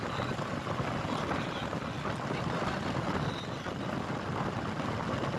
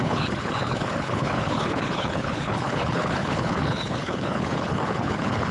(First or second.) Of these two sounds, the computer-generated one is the second